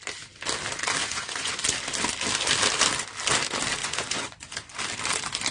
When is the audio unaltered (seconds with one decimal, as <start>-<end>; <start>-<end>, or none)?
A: 0.0-1.0; 1.5-3.8; 4.8-5.5